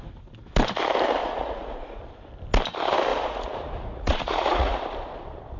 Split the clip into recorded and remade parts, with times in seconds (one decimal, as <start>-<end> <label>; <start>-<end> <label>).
0.0-1.2 recorded; 1.2-2.0 remade; 2.0-3.1 recorded; 3.1-4.8 remade; 4.8-5.6 recorded